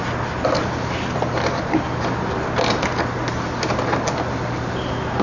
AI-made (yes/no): no